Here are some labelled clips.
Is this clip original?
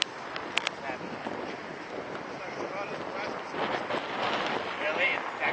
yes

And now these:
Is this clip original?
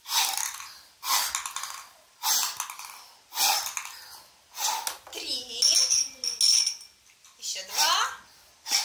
yes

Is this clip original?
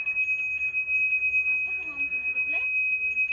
yes